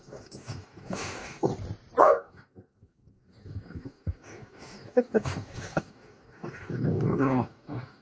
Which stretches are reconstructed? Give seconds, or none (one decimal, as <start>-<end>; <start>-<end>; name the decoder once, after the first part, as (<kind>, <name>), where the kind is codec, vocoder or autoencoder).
0.0-1.5 (codec, DAC); 2.0-8.0